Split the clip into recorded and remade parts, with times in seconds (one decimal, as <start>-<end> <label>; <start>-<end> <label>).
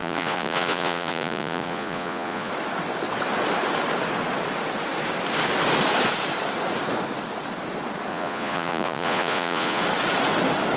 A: 0.0-2.5 remade; 2.5-8.1 recorded; 8.1-9.8 remade; 9.8-10.8 recorded